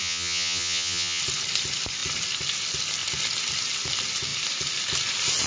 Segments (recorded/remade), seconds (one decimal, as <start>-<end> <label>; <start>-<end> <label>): 0.0-1.2 remade; 1.2-5.5 recorded